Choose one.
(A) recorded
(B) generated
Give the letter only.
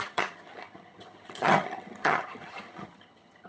B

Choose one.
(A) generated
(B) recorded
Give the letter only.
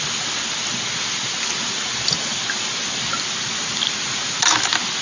B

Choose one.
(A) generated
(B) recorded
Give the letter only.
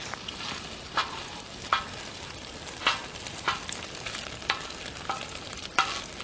B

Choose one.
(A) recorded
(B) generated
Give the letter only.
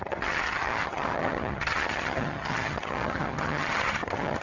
B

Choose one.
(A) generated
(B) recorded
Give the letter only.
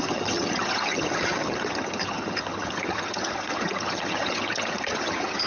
A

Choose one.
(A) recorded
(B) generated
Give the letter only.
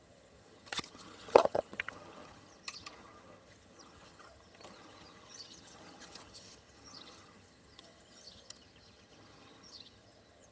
B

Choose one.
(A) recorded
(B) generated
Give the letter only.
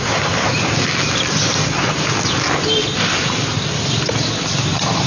A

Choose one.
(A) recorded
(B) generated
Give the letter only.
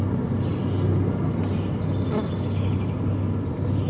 A